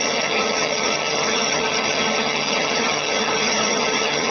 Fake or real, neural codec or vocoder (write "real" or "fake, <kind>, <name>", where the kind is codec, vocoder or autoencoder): fake, vocoder, HiFi-GAN